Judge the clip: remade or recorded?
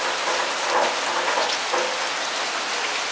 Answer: recorded